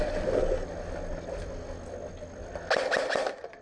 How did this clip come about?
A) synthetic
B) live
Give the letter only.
B